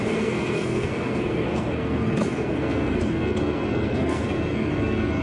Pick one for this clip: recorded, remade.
remade